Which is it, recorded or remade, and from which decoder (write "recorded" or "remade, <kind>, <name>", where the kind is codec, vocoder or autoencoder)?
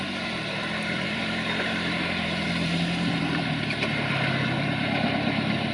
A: remade, vocoder, BigVGAN v2